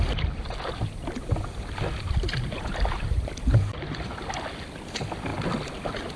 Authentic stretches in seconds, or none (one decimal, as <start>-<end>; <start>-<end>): 0.0-6.2